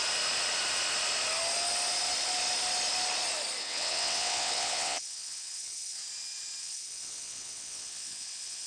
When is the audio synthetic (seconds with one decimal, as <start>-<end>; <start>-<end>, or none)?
3.6-6.0; 6.6-8.7